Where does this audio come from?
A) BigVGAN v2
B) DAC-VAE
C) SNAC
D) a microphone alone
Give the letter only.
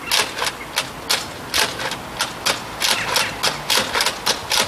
D